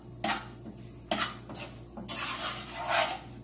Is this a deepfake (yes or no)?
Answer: no